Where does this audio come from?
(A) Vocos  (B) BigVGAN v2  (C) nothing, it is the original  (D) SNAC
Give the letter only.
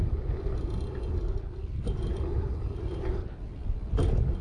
C